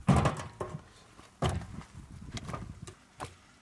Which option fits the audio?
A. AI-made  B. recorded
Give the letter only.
B